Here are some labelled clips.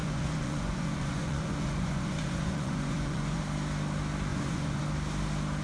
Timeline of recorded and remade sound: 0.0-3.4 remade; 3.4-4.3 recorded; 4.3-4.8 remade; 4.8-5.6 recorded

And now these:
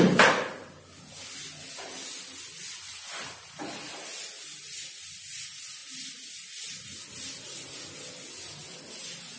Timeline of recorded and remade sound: 0.0-9.4 recorded

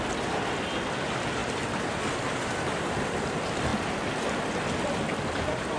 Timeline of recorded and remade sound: 0.0-5.8 recorded

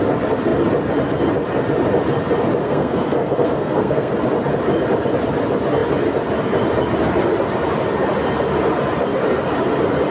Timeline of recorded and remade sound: 0.0-2.6 recorded; 2.6-4.1 remade; 4.1-10.1 recorded

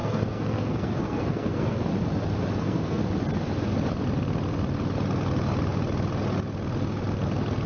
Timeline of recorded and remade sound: 0.0-1.9 remade; 1.9-2.6 recorded; 2.6-3.0 remade; 3.0-7.7 recorded

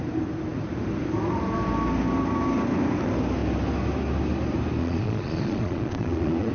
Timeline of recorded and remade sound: 0.0-4.8 recorded; 4.8-6.5 remade

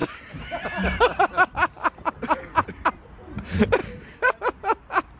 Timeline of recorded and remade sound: 0.0-3.1 remade; 3.1-3.8 recorded; 3.8-4.3 remade; 4.3-5.2 recorded